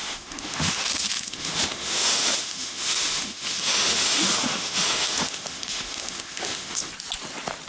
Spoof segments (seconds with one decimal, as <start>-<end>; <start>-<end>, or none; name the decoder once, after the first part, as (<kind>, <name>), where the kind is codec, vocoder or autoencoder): 0.0-6.9 (autoencoder, DAC-VAE)